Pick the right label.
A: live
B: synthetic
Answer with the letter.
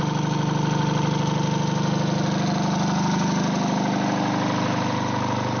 A